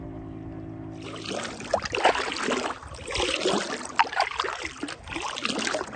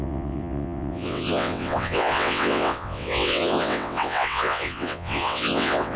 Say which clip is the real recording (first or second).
first